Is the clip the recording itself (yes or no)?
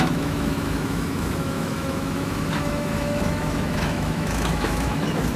no